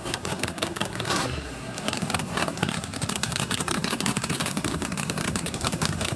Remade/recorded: remade